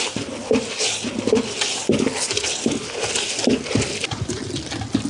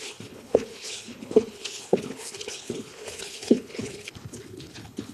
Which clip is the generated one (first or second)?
second